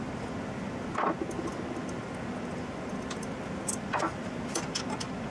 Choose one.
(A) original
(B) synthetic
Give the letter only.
A